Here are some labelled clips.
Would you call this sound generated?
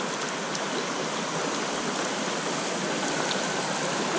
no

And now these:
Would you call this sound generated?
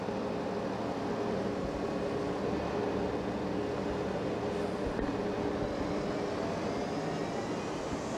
no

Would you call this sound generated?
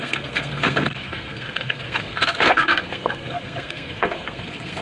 yes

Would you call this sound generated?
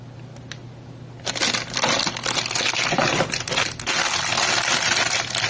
no